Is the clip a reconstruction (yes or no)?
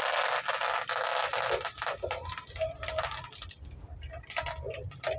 no